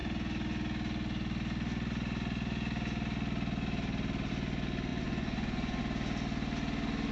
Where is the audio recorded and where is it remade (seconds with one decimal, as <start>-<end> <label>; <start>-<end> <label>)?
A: 0.0-4.9 recorded; 4.9-5.8 remade; 5.8-7.1 recorded